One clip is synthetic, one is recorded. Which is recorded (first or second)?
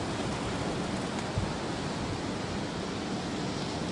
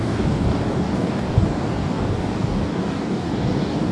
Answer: first